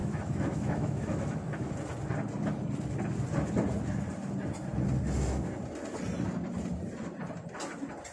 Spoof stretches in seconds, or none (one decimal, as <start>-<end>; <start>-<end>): 0.0-1.7